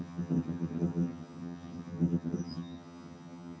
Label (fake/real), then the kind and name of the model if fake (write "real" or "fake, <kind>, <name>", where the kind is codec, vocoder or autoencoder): fake, vocoder, HiFi-GAN